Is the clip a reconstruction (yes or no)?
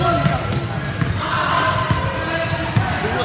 no